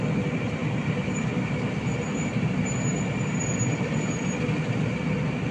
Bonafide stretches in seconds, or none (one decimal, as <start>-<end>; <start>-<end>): 0.0-5.5